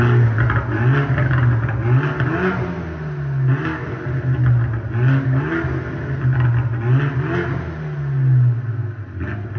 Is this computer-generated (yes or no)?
no